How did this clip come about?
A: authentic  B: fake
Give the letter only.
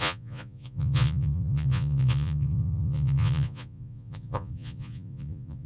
B